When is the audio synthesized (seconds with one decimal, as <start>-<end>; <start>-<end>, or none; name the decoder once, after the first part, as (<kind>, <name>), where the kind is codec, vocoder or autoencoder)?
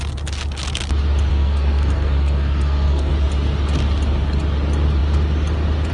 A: 1.3-3.1 (codec, SNAC)